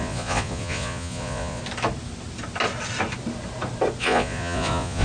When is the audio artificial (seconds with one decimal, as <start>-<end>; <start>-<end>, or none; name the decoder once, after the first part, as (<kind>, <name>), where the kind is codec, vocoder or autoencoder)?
0.0-1.6 (vocoder, Vocos); 4.0-5.0